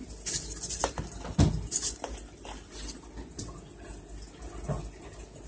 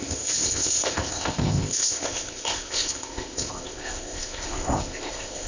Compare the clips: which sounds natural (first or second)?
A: first